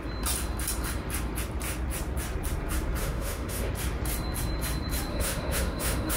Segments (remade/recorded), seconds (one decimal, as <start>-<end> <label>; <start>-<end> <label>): 0.0-3.0 recorded; 3.0-3.7 remade; 3.7-5.1 recorded; 5.1-6.2 remade